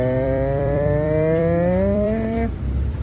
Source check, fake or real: fake